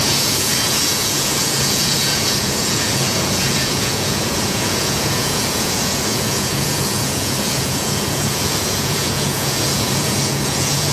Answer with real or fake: fake